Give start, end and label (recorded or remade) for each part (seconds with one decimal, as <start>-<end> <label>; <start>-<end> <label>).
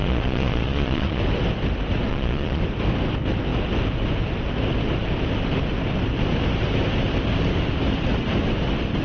0.0-1.2 remade; 1.2-2.1 recorded; 2.1-2.6 remade; 2.6-9.0 recorded